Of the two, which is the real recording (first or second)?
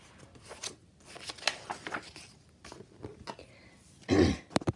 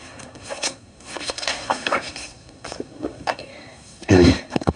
first